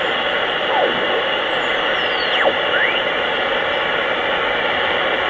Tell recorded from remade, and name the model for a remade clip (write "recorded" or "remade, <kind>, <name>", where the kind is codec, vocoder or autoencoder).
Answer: recorded